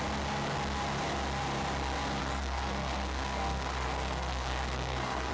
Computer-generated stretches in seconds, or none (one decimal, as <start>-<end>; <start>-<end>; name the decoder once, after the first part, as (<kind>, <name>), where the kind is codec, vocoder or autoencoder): 2.2-5.3 (codec, SNAC)